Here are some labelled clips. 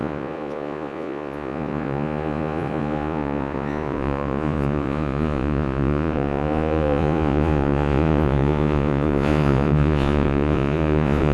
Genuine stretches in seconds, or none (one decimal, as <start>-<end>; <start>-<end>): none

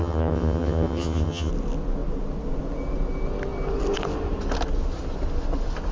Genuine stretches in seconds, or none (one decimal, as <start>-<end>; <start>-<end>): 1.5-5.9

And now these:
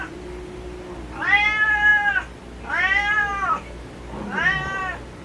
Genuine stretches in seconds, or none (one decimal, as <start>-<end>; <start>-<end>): 0.0-5.2